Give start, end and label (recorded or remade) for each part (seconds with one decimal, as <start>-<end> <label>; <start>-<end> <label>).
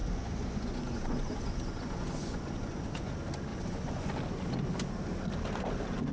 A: 0.0-3.1 remade; 3.1-3.5 recorded; 3.5-4.1 remade; 4.1-6.1 recorded